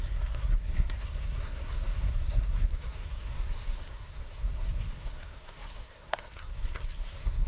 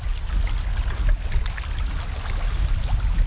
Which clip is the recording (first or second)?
second